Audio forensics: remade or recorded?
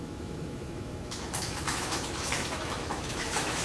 remade